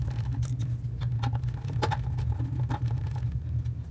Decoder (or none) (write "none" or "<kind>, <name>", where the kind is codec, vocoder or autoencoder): none